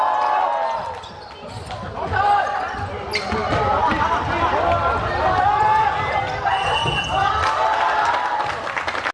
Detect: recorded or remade recorded